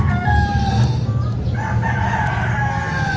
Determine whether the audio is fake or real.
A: real